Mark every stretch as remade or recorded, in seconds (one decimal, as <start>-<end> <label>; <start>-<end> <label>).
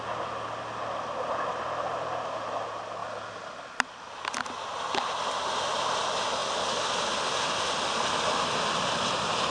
0.0-9.5 recorded